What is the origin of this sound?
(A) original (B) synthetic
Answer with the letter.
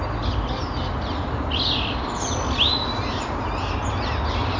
A